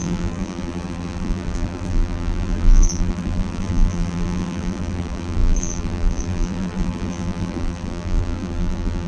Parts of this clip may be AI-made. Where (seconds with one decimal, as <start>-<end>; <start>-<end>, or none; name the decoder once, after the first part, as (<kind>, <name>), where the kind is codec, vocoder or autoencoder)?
0.0-9.1 (vocoder, BigVGAN v2)